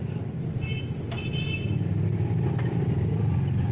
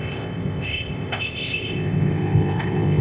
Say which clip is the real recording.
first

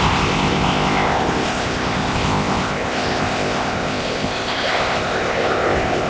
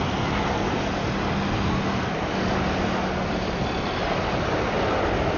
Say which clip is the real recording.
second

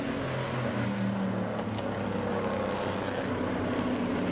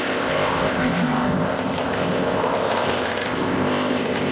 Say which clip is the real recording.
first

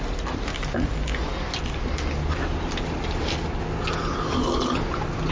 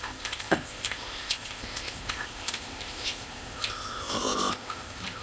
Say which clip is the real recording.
first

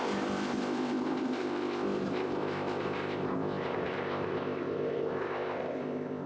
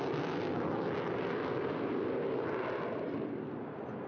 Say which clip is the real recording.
second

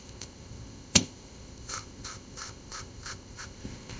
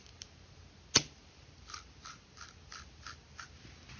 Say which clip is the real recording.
second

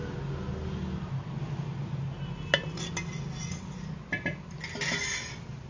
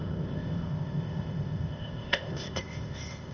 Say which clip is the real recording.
first